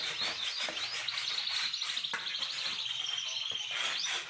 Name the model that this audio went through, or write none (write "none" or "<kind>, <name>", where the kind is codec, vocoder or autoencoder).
none